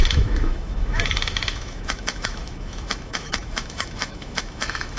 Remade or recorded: remade